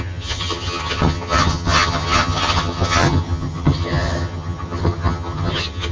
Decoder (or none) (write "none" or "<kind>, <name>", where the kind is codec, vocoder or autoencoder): vocoder, HiFi-GAN